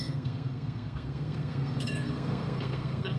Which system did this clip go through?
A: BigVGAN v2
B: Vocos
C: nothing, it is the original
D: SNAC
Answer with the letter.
D